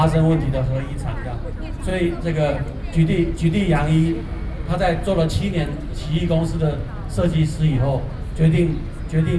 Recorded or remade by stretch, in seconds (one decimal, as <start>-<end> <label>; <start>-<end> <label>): 0.0-9.4 recorded